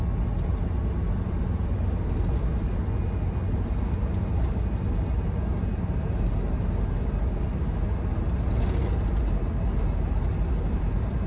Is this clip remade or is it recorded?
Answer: recorded